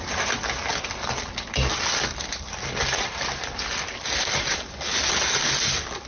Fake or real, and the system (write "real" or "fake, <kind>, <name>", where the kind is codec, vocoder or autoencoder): real